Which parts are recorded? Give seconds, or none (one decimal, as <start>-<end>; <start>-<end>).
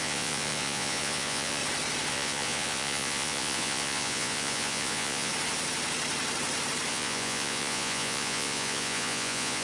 1.6-2.1; 5.3-6.9